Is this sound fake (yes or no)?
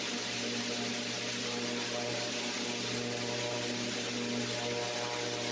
no